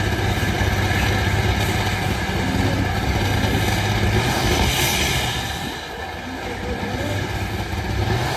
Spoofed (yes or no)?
no